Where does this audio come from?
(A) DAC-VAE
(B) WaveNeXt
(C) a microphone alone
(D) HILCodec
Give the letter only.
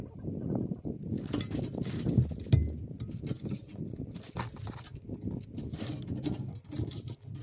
C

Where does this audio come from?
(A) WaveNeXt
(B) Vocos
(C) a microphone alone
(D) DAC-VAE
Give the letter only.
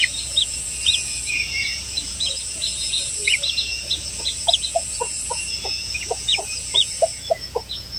B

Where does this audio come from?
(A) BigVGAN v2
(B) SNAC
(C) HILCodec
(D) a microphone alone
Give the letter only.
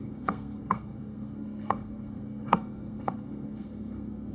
B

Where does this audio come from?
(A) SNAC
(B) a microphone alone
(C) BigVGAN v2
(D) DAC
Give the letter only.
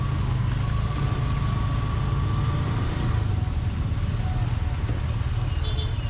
B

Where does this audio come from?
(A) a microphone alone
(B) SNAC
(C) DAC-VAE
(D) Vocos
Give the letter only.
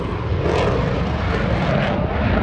A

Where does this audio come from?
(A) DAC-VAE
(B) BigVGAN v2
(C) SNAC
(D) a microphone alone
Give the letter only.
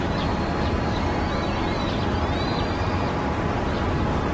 D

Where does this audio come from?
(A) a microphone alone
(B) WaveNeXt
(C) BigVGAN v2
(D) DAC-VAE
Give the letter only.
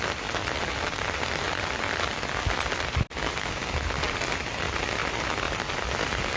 A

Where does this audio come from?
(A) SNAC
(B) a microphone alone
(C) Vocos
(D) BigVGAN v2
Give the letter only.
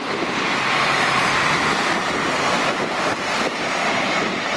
D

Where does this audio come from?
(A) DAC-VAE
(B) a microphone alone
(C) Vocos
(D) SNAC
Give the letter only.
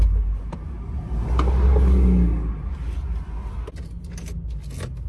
B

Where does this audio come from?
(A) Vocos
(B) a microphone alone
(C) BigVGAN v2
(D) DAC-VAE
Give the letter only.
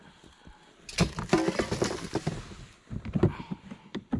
B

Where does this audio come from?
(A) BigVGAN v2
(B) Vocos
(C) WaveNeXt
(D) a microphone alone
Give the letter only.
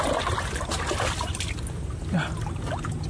D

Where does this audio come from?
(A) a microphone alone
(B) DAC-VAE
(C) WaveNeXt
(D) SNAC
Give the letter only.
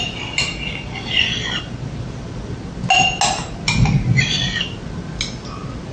A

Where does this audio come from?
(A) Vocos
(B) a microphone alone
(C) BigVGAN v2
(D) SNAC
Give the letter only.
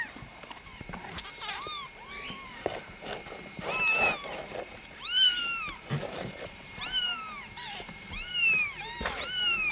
C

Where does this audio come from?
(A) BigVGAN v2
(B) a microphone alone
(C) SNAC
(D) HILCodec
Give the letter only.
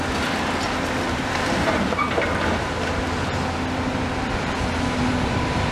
B